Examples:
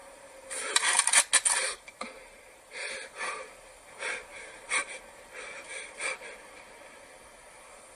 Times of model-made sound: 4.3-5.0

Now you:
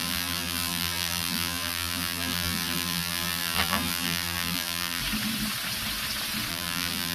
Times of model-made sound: 0.0-5.0; 6.5-7.1

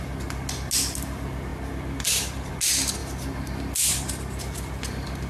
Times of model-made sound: 1.5-2.5; 3.0-3.7

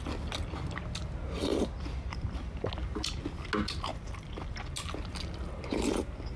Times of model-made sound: 1.5-2.7; 3.9-4.6

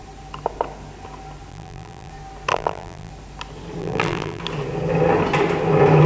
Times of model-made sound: 1.5-2.1; 2.5-3.1; 3.8-4.4

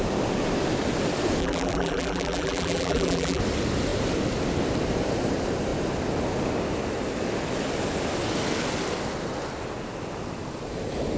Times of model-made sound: 1.4-3.4

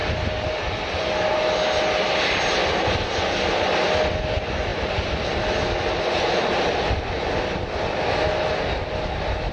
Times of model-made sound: 0.0-1.3; 4.7-7.0

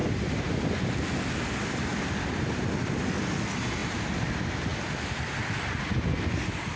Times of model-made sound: 0.0-0.7; 1.9-2.6; 4.7-5.9